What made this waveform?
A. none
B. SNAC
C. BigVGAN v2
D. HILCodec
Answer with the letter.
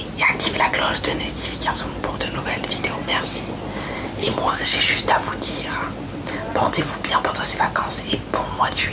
A